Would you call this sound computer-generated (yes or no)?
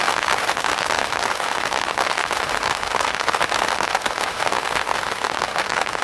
yes